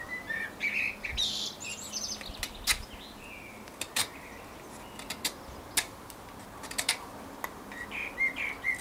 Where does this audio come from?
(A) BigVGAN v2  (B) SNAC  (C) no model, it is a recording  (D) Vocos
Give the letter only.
C